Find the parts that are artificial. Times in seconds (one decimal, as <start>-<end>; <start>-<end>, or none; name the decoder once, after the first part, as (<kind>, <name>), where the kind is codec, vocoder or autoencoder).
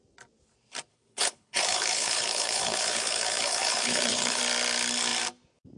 0.9-4.4 (codec, HILCodec)